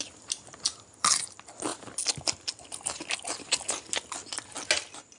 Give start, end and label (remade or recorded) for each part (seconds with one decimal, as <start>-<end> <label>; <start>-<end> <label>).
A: 0.0-5.2 recorded

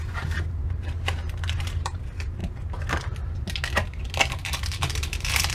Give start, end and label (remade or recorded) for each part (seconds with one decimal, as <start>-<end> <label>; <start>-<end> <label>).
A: 0.0-2.4 remade; 2.4-4.3 recorded; 4.3-5.5 remade

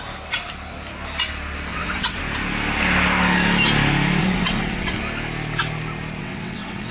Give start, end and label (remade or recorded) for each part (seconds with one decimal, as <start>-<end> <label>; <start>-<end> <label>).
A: 0.0-1.7 recorded; 1.7-2.2 remade; 2.2-4.2 recorded; 4.2-5.0 remade; 5.0-6.2 recorded; 6.2-6.9 remade

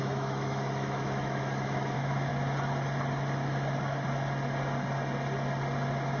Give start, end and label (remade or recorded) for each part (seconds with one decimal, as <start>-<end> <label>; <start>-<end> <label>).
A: 0.0-2.3 remade; 2.3-6.2 recorded

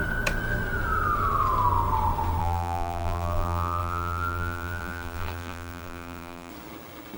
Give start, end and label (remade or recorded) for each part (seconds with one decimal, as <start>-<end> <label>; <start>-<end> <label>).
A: 0.0-2.4 recorded; 2.4-6.5 remade; 6.5-7.2 recorded

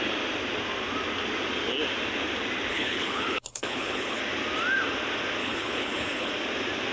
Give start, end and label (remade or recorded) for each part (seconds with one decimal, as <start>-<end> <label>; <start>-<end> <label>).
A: 0.0-2.7 recorded; 2.7-4.2 remade; 4.2-5.4 recorded; 5.4-6.3 remade; 6.3-6.9 recorded

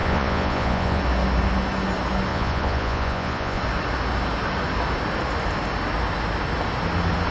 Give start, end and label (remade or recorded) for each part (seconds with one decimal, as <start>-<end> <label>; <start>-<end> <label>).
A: 0.0-1.0 remade; 1.0-2.3 recorded; 2.3-3.6 remade; 3.6-7.3 recorded